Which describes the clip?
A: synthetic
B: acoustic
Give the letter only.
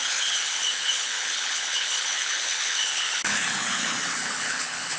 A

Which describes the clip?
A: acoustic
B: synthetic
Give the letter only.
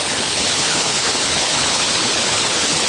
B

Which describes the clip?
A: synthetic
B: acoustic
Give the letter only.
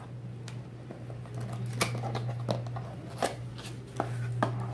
B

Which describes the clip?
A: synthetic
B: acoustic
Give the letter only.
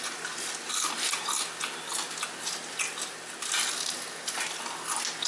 B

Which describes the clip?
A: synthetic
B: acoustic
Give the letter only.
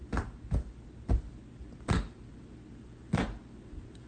B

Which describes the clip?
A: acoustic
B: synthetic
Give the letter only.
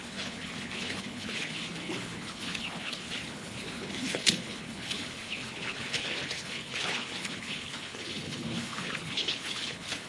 B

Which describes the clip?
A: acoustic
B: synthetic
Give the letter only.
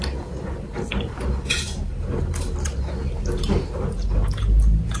A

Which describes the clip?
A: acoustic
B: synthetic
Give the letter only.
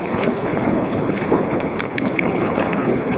B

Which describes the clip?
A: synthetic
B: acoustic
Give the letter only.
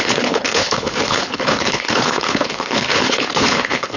A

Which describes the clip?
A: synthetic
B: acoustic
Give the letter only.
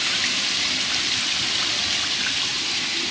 B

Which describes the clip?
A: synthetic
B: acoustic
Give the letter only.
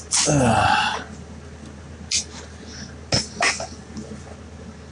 B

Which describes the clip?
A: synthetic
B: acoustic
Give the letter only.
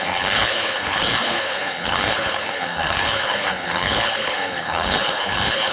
A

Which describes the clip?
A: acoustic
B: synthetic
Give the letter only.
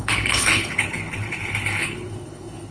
B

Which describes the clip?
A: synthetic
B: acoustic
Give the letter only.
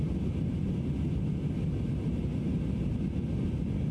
B